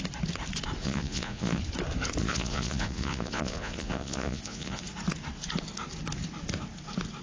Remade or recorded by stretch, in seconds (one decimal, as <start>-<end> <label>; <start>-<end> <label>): 0.0-0.8 recorded; 0.8-1.6 remade; 1.6-2.2 recorded; 2.2-4.8 remade; 4.8-7.2 recorded